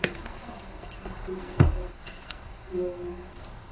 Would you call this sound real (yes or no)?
no